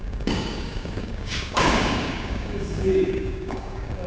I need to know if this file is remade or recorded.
remade